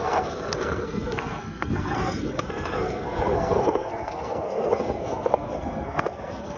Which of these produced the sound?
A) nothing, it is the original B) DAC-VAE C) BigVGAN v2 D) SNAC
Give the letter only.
D